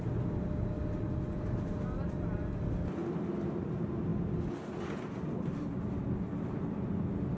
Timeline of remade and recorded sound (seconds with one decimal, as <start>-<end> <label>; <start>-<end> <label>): 0.0-7.4 recorded